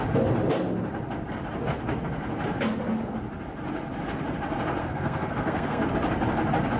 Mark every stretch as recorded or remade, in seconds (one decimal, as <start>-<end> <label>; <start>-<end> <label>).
0.0-4.8 recorded; 4.8-5.9 remade; 5.9-6.8 recorded